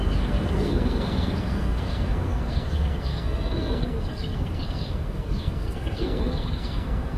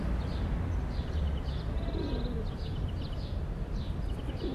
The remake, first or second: first